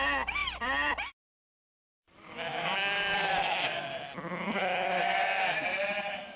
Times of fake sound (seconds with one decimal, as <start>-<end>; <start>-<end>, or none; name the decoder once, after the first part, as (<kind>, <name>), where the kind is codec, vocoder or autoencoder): 0.4-3.8 (vocoder, BigVGAN v2)